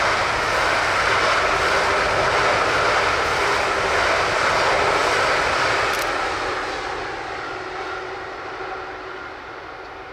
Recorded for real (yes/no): yes